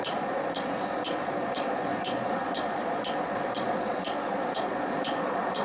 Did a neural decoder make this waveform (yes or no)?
yes